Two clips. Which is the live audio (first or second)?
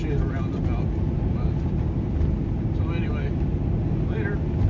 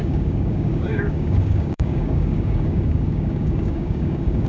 first